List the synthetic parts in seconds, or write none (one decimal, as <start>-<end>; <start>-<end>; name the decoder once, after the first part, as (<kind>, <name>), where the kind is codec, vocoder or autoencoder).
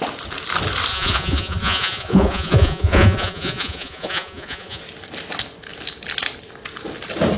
0.9-4.8 (vocoder, Vocos)